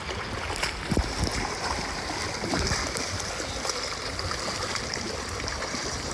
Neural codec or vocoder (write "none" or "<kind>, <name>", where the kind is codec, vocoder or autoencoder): none